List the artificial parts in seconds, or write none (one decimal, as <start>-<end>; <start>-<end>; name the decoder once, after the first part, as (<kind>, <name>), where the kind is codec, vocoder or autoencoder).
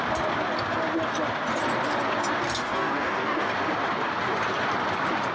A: 2.6-3.5 (codec, DAC)